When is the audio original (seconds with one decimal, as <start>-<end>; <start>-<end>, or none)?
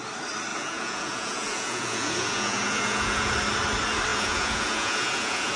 0.0-0.5; 3.3-4.1